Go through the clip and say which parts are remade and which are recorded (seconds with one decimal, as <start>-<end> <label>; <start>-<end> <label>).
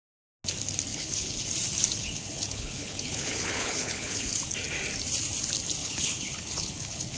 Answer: 0.0-0.9 recorded; 0.9-1.5 remade; 1.5-2.0 recorded; 2.0-4.3 remade; 4.3-5.8 recorded; 5.8-7.2 remade